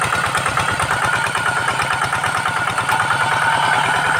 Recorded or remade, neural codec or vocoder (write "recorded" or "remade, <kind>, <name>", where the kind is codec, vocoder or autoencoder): recorded